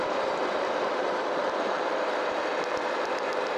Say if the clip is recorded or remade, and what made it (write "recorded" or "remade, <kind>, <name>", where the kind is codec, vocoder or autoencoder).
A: remade, vocoder, BigVGAN v2